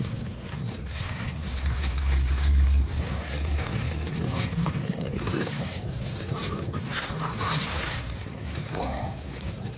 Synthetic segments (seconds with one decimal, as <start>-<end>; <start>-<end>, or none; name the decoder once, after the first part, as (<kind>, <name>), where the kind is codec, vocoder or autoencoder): 0.0-9.8 (codec, SNAC)